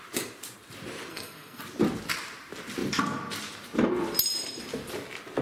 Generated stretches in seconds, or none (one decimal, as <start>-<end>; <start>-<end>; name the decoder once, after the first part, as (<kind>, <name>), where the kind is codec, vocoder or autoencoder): 1.1-1.6 (codec, SNAC)